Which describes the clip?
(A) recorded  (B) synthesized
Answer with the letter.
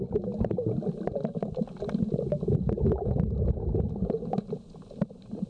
A